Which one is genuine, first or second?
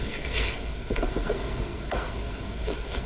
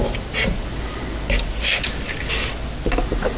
second